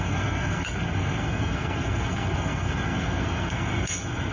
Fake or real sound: fake